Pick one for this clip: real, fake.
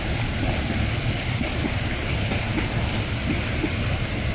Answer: real